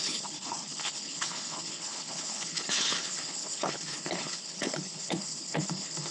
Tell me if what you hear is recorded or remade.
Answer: remade